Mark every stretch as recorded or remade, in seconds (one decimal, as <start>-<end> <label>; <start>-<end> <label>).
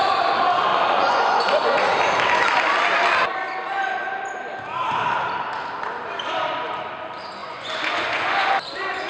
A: 0.0-0.7 recorded; 0.7-1.8 remade; 1.8-7.4 recorded; 7.4-8.5 remade; 8.5-9.1 recorded